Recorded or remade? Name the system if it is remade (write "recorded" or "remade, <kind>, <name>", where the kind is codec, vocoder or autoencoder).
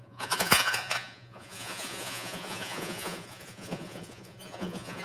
remade, vocoder, Vocos